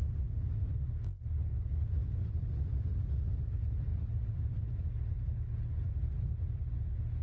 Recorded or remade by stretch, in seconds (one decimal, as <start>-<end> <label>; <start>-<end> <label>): 0.0-1.5 recorded; 1.5-2.3 remade; 2.3-7.2 recorded